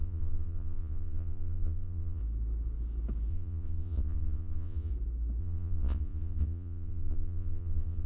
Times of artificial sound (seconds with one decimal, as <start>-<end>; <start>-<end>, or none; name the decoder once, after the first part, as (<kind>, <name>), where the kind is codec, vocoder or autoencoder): 0.0-2.2 (vocoder, Vocos); 3.3-4.9; 5.4-8.1